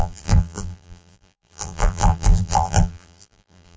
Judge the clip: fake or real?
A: fake